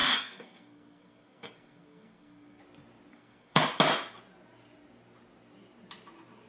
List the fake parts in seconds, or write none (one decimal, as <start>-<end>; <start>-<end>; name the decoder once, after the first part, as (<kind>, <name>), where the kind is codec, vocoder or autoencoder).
0.0-2.6 (codec, SNAC); 3.1-3.6